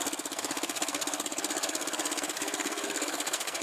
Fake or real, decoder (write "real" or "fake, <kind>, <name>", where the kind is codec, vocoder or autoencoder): fake, codec, SNAC